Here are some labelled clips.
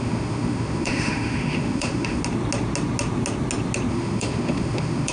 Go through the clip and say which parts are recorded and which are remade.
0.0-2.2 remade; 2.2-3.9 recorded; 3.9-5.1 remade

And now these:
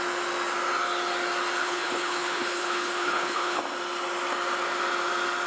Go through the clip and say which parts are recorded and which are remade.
0.0-1.6 recorded; 1.6-3.6 remade; 3.6-5.5 recorded

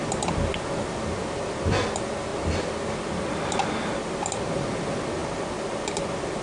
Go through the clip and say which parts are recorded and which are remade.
0.0-6.4 recorded

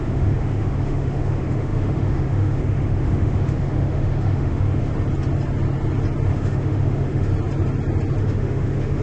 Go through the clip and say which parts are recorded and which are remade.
0.0-4.9 remade; 4.9-6.3 recorded; 6.3-7.3 remade; 7.3-8.2 recorded; 8.2-9.0 remade